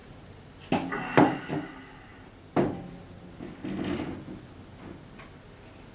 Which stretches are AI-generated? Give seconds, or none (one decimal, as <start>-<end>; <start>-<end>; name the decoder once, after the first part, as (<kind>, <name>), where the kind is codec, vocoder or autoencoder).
0.0-0.7 (vocoder, BigVGAN v2)